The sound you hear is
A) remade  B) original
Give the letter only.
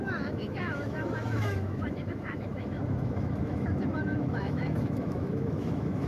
A